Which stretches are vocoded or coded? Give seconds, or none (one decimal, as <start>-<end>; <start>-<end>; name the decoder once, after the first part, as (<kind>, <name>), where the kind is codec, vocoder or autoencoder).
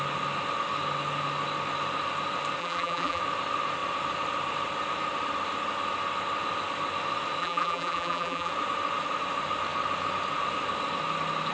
2.6-3.2 (vocoder, BigVGAN v2); 7.4-8.5